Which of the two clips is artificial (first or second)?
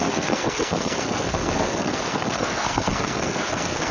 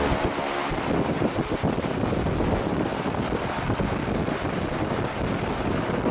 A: first